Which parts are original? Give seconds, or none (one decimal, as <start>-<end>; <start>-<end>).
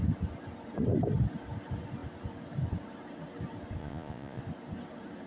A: 0.0-3.8; 4.4-5.3